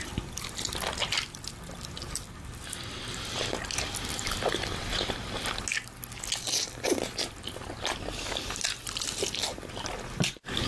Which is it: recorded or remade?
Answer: recorded